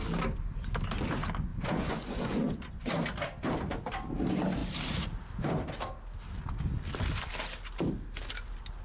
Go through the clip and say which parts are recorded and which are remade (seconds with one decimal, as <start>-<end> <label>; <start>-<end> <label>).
0.0-1.5 recorded; 1.5-2.9 remade; 2.9-8.8 recorded